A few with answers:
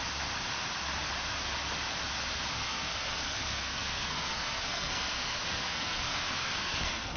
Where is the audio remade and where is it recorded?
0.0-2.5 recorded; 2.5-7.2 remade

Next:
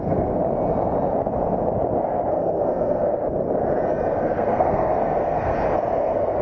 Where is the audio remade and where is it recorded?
0.0-0.4 remade; 0.4-2.3 recorded; 2.3-3.2 remade; 3.2-4.1 recorded; 4.1-5.5 remade; 5.5-6.0 recorded; 6.0-6.4 remade

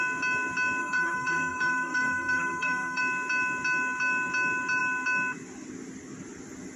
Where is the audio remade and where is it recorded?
0.0-0.8 recorded; 0.8-3.0 remade; 3.0-6.8 recorded

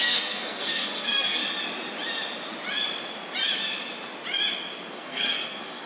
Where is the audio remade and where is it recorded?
0.0-1.4 remade; 1.4-4.9 recorded; 4.9-5.9 remade

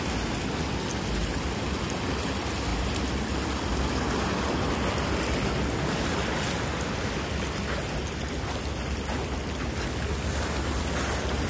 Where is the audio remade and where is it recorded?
0.0-11.5 recorded

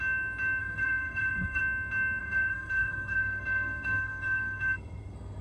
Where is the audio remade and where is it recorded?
0.0-0.6 recorded; 0.6-1.6 remade; 1.6-2.2 recorded; 2.2-5.4 remade

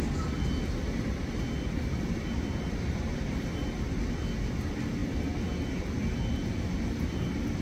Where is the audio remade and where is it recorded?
0.0-7.6 recorded